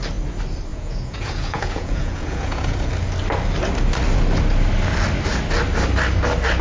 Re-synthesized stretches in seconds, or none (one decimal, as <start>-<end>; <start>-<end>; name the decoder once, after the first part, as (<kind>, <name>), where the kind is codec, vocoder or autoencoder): 0.7-2.9 (vocoder, Vocos)